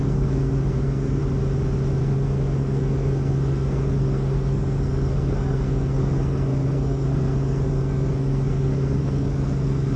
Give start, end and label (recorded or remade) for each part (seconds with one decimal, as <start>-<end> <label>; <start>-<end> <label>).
0.0-1.2 remade; 1.2-2.0 recorded; 2.0-10.0 remade

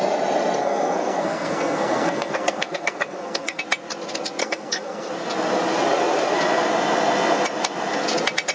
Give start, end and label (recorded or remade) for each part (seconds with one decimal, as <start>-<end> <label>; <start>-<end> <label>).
0.0-0.6 recorded; 0.6-3.6 remade; 3.6-4.4 recorded; 4.4-5.1 remade; 5.1-8.5 recorded

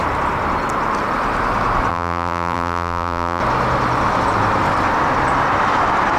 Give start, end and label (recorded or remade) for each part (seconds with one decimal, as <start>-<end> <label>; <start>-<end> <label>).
0.0-1.9 recorded; 1.9-3.4 remade; 3.4-6.2 recorded

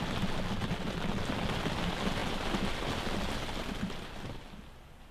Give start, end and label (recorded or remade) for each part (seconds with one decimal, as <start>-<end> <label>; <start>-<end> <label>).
0.0-5.1 recorded

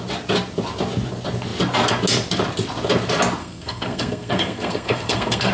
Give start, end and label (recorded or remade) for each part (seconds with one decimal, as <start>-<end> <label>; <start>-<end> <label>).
0.0-3.4 recorded; 3.4-5.5 remade

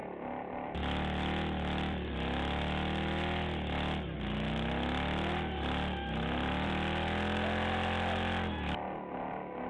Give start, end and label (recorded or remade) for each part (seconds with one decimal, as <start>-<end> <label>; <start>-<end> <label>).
0.0-9.7 recorded